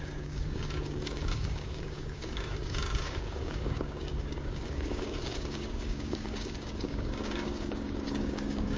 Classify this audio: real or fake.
fake